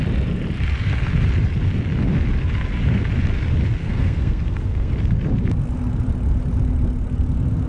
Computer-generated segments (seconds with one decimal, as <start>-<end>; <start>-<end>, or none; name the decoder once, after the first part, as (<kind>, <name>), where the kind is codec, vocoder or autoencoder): 3.8-4.9 (codec, SNAC)